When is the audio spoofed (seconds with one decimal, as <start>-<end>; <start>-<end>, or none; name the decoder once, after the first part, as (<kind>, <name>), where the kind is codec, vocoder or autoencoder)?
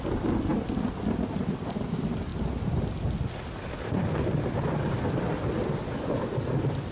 none